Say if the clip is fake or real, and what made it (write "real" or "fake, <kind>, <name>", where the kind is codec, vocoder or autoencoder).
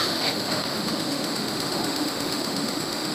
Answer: fake, autoencoder, DAC-VAE